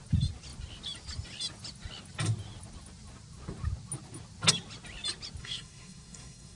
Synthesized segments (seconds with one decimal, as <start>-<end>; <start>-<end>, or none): 5.4-6.6